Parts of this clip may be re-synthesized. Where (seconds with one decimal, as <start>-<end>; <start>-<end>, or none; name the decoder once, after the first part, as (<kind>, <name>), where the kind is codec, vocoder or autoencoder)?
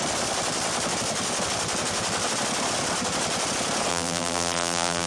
3.9-5.1 (vocoder, BigVGAN v2)